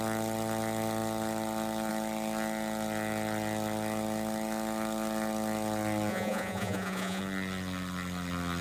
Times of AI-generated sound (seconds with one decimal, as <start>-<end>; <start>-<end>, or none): 6.1-7.2